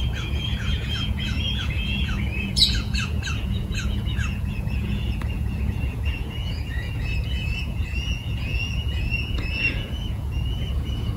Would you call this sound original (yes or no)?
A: no